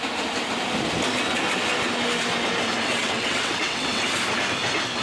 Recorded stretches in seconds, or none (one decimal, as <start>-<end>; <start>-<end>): 0.0-3.0; 4.0-5.0